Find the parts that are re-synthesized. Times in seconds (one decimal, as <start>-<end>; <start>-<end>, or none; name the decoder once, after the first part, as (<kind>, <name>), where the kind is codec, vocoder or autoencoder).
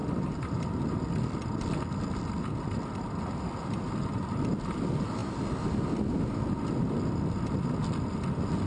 none